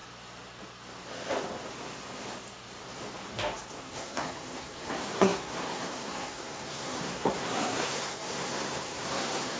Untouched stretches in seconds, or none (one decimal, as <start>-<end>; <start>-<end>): 0.0-3.7